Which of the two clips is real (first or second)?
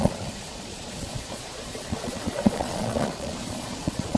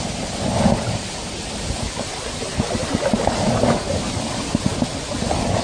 second